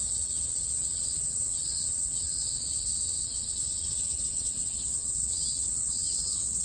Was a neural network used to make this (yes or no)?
yes